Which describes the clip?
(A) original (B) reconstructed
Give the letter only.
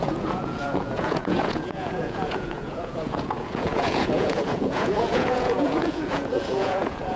B